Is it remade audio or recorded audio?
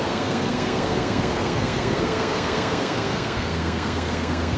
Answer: remade